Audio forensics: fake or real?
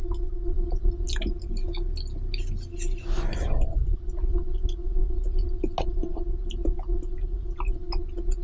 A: real